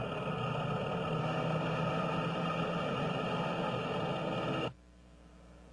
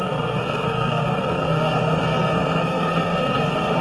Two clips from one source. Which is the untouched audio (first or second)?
first